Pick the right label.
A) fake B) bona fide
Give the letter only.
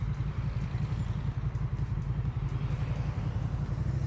B